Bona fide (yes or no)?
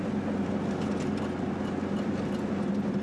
yes